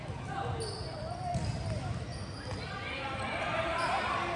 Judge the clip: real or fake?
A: real